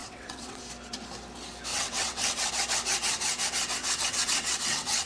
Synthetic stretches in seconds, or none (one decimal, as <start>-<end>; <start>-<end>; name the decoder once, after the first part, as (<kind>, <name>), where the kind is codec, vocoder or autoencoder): 0.0-0.6 (vocoder, WaveNeXt); 1.7-2.5; 3.8-5.1